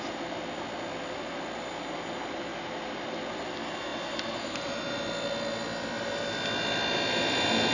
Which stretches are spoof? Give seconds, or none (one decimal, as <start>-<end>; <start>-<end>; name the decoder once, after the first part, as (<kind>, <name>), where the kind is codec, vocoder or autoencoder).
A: none